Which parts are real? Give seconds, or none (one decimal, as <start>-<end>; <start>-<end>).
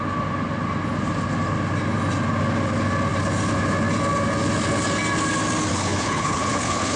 0.0-5.7